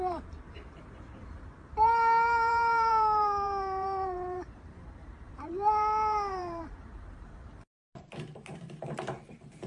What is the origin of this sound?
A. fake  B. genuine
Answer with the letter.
A